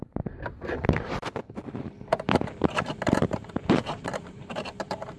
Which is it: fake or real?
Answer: fake